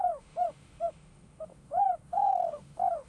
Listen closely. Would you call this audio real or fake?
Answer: fake